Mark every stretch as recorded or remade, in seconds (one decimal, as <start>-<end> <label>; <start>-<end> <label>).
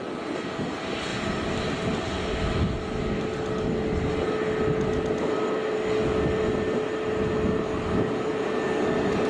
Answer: 0.0-9.3 recorded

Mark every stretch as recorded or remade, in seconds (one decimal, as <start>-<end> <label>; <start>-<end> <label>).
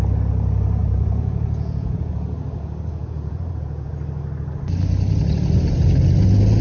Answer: 0.0-0.8 recorded; 0.8-2.1 remade; 2.1-3.0 recorded; 3.0-3.9 remade; 3.9-6.6 recorded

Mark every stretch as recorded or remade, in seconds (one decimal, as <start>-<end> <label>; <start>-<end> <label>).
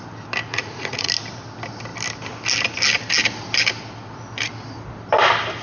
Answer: 0.0-0.5 recorded; 0.5-1.1 remade; 1.1-5.6 recorded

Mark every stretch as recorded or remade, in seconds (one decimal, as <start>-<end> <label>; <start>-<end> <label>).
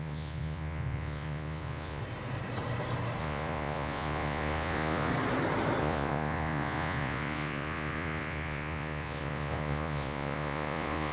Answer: 0.0-2.0 remade; 2.0-3.2 recorded; 3.2-5.1 remade; 5.1-5.8 recorded; 5.8-11.1 remade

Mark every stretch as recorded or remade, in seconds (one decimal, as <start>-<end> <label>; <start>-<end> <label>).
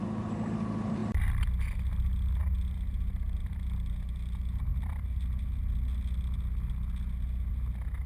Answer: 0.0-8.1 recorded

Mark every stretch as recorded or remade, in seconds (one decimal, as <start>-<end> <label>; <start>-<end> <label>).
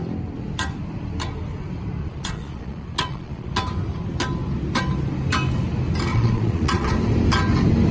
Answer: 0.0-2.0 recorded; 2.0-3.5 remade; 3.5-6.1 recorded; 6.1-6.9 remade; 6.9-7.9 recorded